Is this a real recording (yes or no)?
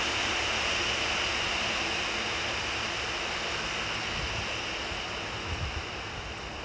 yes